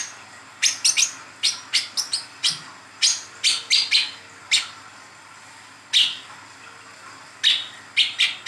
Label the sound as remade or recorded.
recorded